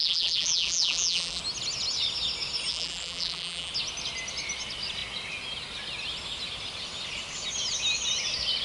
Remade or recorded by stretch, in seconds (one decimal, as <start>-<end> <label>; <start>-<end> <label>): 0.0-1.4 remade; 1.4-2.7 recorded; 2.7-3.7 remade; 3.7-8.6 recorded